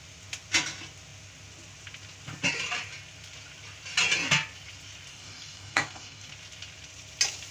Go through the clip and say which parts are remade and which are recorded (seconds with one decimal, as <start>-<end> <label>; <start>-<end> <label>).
0.0-5.1 recorded; 5.1-6.3 remade; 6.3-7.5 recorded